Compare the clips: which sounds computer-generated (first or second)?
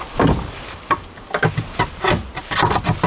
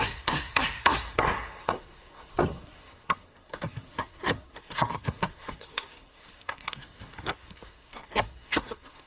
second